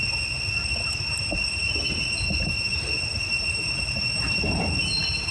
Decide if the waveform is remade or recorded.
recorded